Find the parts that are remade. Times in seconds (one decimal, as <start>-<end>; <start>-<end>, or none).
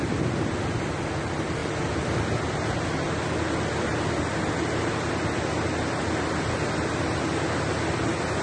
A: none